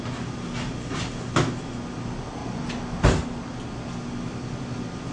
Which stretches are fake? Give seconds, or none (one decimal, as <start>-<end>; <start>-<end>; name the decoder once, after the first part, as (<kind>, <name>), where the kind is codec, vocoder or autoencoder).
none

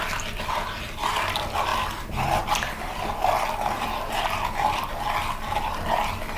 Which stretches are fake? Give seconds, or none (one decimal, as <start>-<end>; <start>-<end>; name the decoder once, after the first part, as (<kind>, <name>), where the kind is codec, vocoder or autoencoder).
none

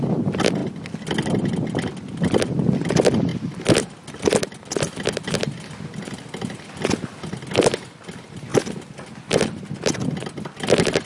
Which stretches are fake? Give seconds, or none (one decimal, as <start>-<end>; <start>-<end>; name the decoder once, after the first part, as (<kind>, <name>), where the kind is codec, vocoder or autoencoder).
none

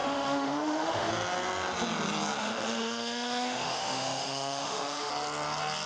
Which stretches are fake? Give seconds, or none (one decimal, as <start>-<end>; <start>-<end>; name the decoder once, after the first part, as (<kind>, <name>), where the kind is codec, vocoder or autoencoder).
0.0-1.1 (autoencoder, DAC-VAE); 2.4-5.1